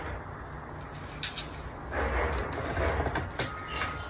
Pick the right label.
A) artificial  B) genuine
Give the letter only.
B